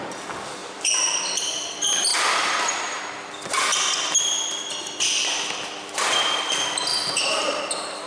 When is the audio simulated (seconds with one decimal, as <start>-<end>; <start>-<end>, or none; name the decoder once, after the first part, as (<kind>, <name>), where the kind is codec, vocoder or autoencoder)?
0.6-1.2 (vocoder, BigVGAN v2); 2.1-3.3; 6.9-7.6